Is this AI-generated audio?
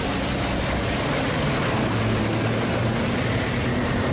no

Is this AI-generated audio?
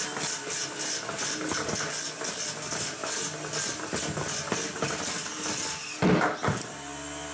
no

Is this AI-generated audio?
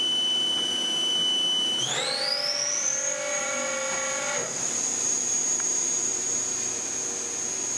no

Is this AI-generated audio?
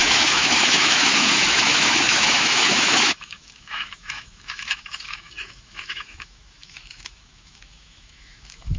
yes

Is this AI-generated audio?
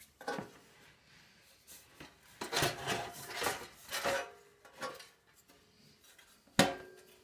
no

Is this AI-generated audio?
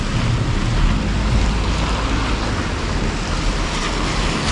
no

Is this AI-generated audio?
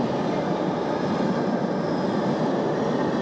no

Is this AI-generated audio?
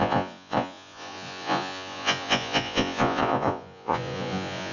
yes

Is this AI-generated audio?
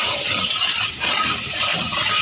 yes